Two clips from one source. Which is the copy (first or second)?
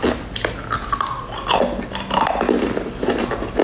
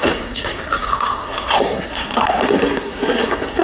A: second